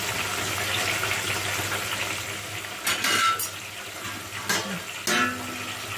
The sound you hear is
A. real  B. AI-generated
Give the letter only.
A